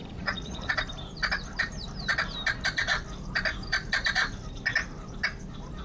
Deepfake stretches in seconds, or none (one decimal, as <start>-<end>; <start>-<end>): 0.0-0.7